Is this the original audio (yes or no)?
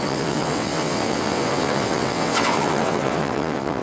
no